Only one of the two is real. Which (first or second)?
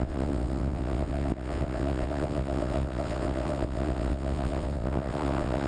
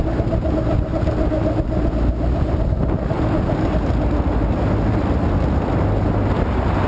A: second